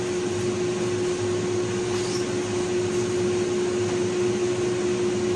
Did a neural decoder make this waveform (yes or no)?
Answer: no